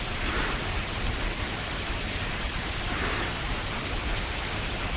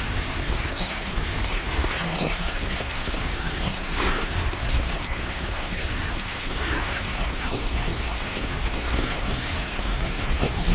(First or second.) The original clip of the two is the first